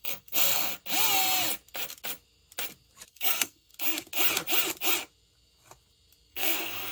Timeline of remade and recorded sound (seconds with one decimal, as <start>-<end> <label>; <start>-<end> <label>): 0.0-0.7 remade; 0.7-3.1 recorded; 3.1-3.7 remade; 3.7-6.3 recorded; 6.3-6.9 remade